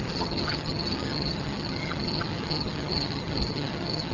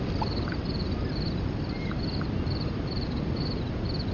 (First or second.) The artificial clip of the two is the first